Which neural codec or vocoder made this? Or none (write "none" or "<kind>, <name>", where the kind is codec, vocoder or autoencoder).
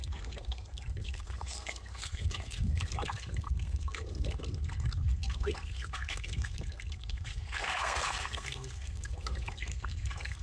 codec, SNAC